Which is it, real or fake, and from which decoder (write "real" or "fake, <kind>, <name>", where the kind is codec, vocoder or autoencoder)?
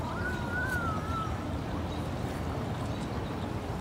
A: fake, vocoder, BigVGAN v2